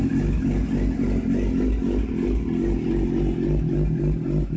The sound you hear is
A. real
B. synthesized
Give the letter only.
A